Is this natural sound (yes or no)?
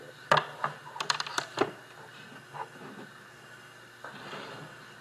yes